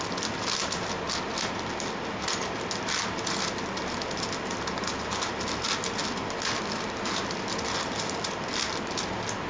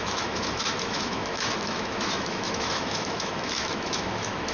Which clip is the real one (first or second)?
first